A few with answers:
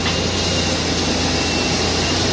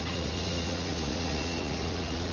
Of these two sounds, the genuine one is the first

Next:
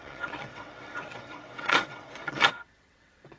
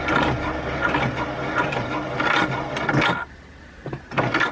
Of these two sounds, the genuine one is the second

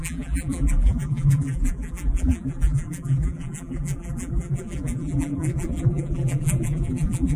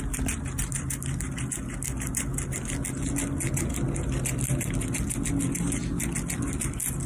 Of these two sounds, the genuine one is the second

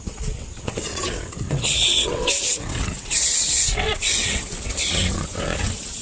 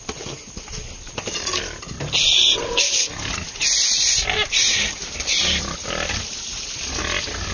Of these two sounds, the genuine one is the second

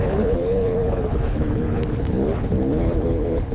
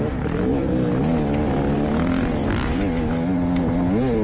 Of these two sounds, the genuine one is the second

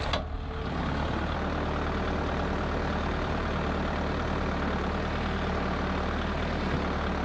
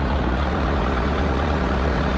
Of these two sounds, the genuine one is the first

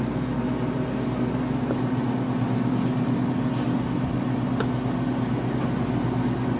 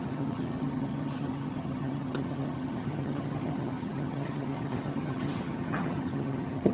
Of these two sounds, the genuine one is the first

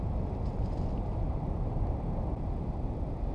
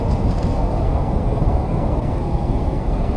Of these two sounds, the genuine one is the first